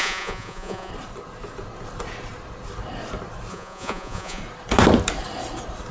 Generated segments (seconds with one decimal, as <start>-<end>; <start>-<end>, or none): 0.0-0.9; 3.5-4.4